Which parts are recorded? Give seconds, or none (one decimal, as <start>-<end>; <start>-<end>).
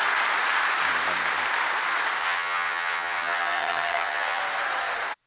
0.0-2.2; 4.4-5.3